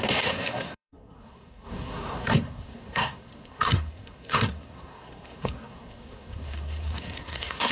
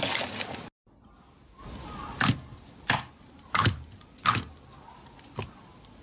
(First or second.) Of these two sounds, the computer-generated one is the first